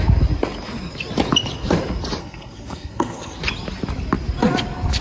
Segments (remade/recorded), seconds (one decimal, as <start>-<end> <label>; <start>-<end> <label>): 0.0-2.2 recorded; 2.2-3.4 remade; 3.4-5.0 recorded